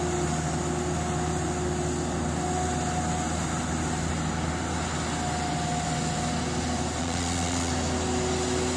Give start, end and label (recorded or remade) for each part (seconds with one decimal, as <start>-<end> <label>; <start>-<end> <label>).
0.0-7.0 recorded; 7.0-7.7 remade; 7.7-8.8 recorded